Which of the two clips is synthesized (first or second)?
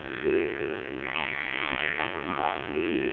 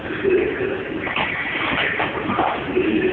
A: first